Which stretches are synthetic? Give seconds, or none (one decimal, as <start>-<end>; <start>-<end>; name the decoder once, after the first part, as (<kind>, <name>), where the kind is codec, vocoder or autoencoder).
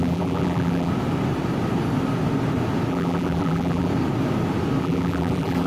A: 0.0-0.9 (vocoder, BigVGAN v2); 2.9-3.9; 4.8-5.7